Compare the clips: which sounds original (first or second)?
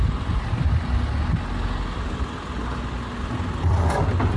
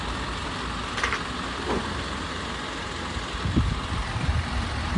first